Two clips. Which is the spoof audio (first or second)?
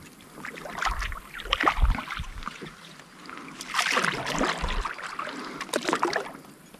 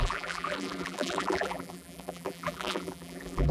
second